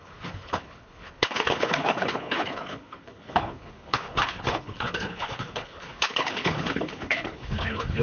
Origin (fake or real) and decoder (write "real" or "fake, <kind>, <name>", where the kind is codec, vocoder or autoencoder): fake, codec, HILCodec